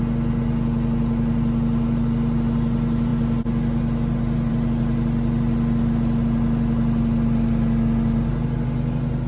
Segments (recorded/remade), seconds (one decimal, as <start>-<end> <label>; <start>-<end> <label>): 0.0-9.3 recorded